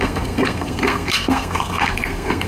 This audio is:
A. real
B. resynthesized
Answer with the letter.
B